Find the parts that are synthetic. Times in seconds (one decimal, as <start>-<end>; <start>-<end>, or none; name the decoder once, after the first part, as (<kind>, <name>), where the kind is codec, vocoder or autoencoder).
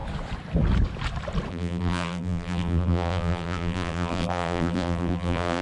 1.5-5.6 (vocoder, BigVGAN v2)